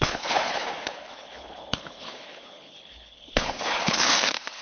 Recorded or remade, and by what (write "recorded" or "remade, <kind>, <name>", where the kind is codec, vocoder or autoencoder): remade, codec, HILCodec